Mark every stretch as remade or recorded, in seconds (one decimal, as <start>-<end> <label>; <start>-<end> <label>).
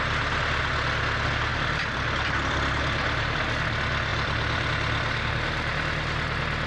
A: 0.0-1.5 recorded; 1.5-2.8 remade; 2.8-4.1 recorded; 4.1-4.7 remade; 4.7-6.7 recorded